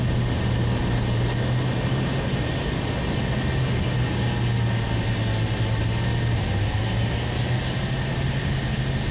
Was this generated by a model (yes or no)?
no